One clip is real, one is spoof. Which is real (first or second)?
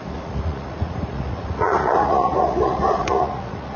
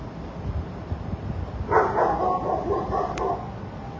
second